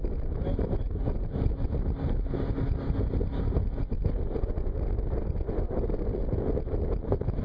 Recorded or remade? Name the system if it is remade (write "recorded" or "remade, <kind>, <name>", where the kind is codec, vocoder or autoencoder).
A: recorded